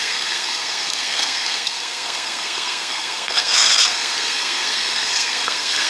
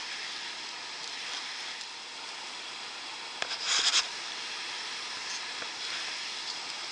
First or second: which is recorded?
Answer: second